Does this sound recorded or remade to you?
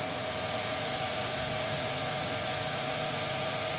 remade